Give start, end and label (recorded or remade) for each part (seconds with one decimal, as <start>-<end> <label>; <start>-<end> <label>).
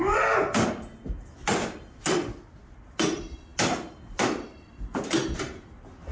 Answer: 0.0-6.1 recorded